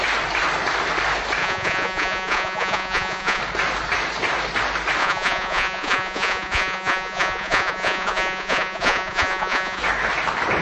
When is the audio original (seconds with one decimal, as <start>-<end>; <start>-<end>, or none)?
0.0-1.4; 3.4-5.0; 9.8-10.6